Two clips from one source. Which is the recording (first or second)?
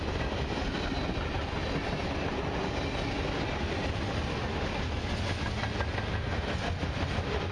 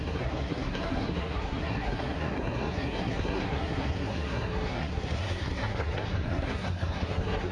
first